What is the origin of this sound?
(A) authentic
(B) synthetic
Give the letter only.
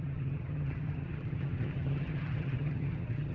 B